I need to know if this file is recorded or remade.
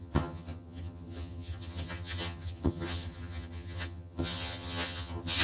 remade